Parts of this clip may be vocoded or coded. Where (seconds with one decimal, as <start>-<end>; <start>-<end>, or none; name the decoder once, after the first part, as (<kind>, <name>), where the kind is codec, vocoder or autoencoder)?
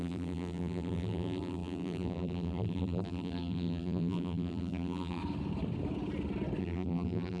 0.0-5.2 (vocoder, BigVGAN v2); 6.6-7.4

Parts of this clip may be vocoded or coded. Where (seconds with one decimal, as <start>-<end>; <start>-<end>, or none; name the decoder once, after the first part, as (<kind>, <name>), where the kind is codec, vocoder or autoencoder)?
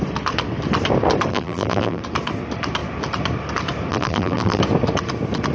1.3-2.0 (vocoder, BigVGAN v2); 3.9-4.6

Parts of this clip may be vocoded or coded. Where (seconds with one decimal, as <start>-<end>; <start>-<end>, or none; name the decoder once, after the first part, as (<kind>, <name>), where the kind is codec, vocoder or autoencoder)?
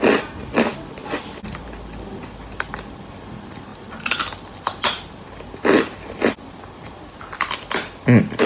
none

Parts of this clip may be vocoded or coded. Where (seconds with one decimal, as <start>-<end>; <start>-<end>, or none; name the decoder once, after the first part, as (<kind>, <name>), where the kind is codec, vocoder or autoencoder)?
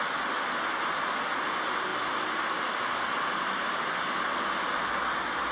none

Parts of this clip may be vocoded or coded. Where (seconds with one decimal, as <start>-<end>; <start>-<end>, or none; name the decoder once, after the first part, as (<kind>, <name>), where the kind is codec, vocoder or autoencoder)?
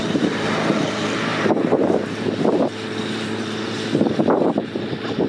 0.0-5.3 (vocoder, BigVGAN v2)